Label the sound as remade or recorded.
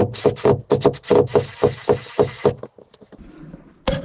recorded